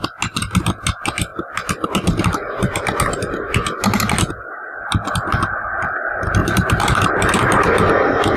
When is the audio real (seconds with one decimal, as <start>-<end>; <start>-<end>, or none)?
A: 0.0-4.8; 6.0-6.4; 7.1-8.4